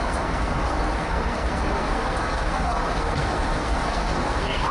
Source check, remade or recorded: remade